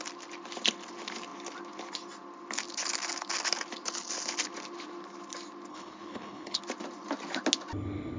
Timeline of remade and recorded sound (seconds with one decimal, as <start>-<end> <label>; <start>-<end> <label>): 0.0-5.7 recorded; 5.7-6.6 remade; 6.6-8.2 recorded